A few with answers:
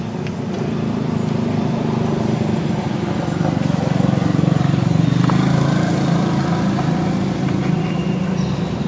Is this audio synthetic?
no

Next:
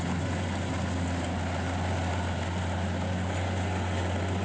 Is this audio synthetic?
no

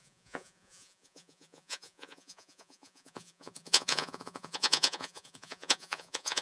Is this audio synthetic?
yes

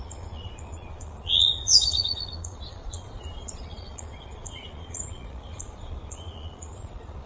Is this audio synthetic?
yes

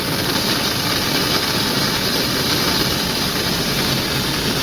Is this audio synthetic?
no